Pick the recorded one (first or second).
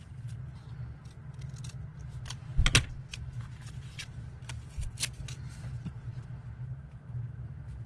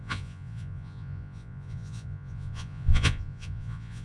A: first